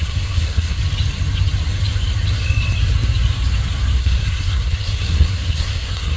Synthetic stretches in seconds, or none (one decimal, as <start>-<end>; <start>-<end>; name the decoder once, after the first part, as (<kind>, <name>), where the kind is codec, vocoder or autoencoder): 0.0-0.8 (codec, SNAC); 4.0-6.2